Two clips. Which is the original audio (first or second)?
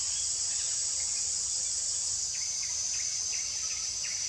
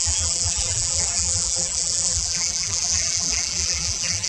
first